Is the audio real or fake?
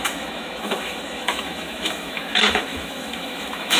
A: fake